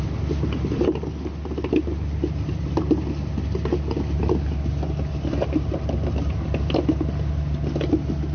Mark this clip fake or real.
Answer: real